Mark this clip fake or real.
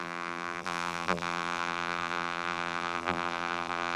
fake